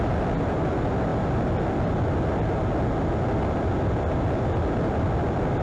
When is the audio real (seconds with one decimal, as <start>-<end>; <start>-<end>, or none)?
0.0-5.6